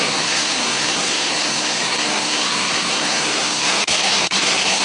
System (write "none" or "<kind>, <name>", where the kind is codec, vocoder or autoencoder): codec, SNAC